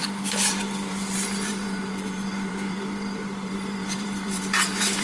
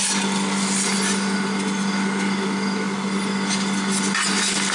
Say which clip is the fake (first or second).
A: first